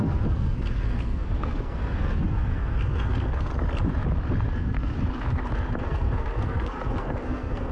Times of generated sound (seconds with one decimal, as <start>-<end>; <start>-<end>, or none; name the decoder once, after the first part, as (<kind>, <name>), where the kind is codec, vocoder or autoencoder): 0.0-3.5 (codec, SNAC); 4.5-4.9; 5.8-7.7

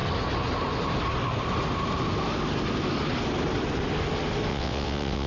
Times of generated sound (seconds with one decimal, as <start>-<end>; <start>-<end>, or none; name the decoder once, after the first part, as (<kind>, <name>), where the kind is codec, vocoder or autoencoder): 4.5-5.3 (vocoder, WaveNeXt)